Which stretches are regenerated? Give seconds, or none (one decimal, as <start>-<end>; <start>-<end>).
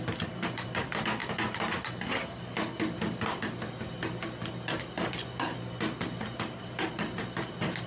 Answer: none